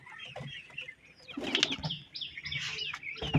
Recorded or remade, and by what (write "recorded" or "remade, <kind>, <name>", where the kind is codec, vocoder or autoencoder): recorded